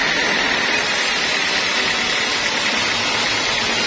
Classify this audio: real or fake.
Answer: real